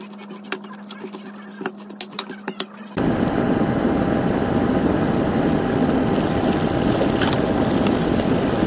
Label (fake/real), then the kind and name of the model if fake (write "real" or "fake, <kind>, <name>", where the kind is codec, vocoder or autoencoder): real